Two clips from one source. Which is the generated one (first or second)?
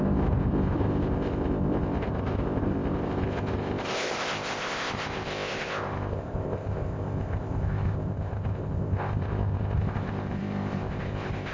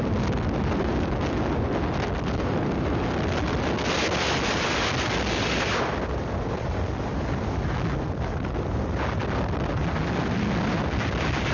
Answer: first